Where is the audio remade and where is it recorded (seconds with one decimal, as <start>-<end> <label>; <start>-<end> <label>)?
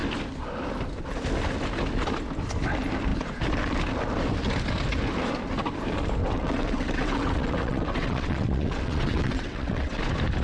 0.0-6.2 recorded; 6.2-10.0 remade; 10.0-10.4 recorded